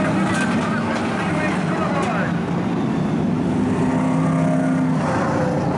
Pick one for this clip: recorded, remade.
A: recorded